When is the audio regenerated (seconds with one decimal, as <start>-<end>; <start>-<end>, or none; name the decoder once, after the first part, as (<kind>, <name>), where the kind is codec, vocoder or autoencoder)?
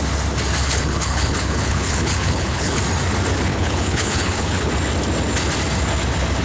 0.6-2.8 (codec, HILCodec); 3.5-4.7